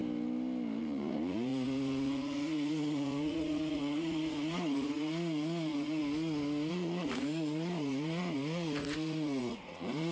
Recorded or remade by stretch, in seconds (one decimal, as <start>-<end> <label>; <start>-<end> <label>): 0.0-0.8 recorded; 0.8-6.0 remade; 6.0-6.7 recorded; 6.7-10.1 remade